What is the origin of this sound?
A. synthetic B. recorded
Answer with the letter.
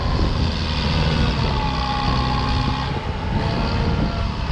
B